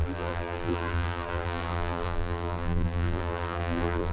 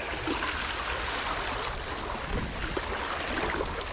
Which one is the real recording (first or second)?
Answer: second